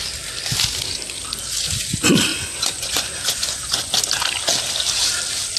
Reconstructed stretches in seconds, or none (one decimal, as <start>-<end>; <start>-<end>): 2.3-3.9